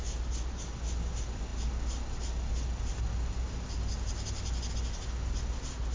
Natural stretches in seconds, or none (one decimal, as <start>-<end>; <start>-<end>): 0.0-5.9